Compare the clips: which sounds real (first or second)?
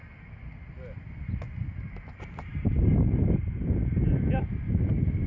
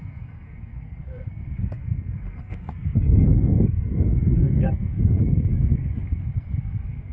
first